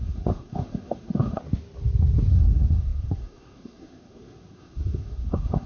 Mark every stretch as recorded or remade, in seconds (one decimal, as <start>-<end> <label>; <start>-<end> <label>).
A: 0.0-1.4 remade; 1.4-2.3 recorded; 2.3-5.7 remade